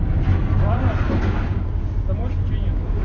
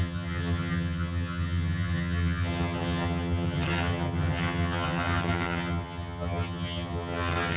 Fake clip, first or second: second